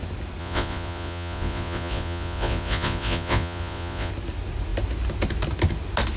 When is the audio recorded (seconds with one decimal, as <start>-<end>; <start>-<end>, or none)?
0.0-0.4; 4.1-6.2